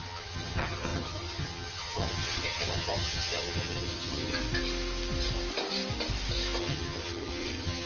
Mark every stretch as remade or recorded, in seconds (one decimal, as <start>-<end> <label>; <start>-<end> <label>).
0.0-4.4 remade; 4.4-6.6 recorded; 6.6-7.9 remade